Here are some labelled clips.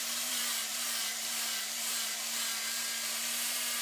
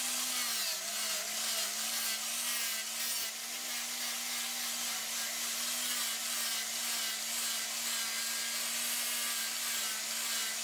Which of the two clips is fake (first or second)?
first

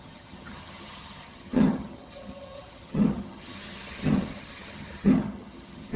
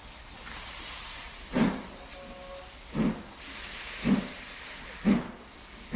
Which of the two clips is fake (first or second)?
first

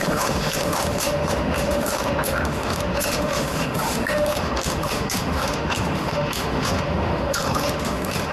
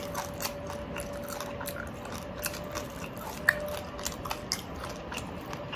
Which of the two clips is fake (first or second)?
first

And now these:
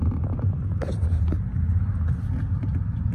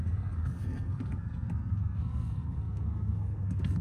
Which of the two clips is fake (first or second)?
second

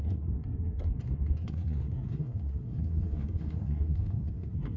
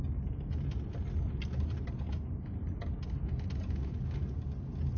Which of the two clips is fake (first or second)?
first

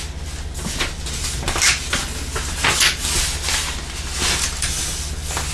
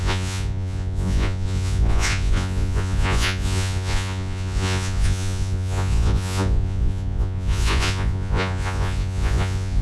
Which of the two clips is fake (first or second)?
second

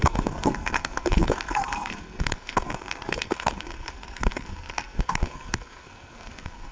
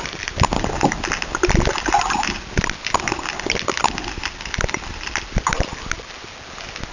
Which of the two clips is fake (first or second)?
first